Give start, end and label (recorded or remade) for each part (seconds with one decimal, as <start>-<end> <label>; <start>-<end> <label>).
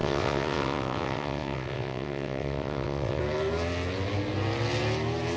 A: 0.0-3.2 remade; 3.2-5.4 recorded